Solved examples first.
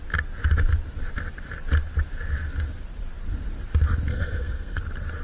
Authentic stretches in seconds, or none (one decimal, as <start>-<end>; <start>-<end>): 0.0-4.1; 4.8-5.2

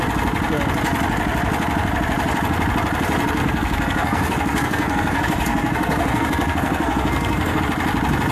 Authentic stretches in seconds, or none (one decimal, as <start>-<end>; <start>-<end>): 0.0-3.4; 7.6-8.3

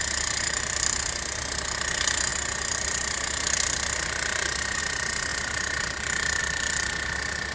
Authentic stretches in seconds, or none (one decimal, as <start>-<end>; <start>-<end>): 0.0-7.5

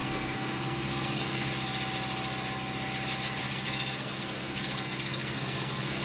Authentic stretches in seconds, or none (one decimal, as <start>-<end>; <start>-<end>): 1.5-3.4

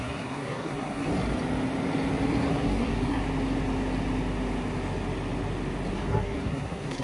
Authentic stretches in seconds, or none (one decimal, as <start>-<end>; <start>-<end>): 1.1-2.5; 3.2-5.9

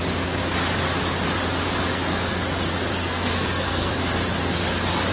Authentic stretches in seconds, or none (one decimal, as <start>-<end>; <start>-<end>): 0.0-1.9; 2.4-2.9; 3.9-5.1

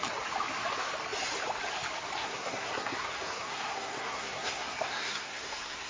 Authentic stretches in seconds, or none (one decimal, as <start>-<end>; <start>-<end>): 0.0-2.2

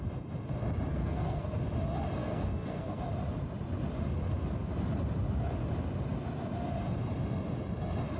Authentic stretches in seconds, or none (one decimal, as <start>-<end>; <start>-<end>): 0.0-0.9; 1.6-2.2; 3.0-8.2